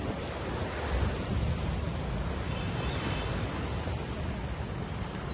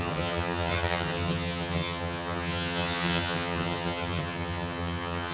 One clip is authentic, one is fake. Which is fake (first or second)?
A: second